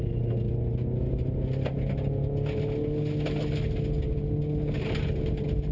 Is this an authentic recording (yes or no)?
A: yes